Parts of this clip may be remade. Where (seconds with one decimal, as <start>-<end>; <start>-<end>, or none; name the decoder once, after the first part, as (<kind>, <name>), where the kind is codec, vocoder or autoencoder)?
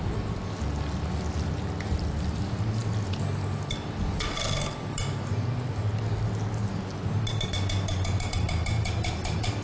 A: none